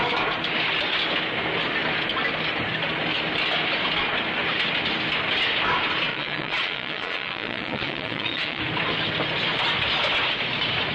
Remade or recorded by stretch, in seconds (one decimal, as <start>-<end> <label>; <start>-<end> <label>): 0.0-6.1 recorded; 6.1-8.6 remade; 8.6-10.9 recorded